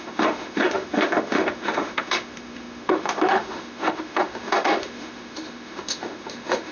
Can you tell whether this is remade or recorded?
remade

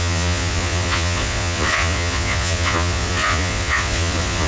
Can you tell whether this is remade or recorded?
remade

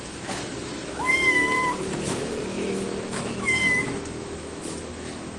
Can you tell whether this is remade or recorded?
remade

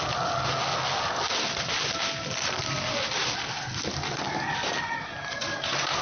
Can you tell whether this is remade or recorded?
recorded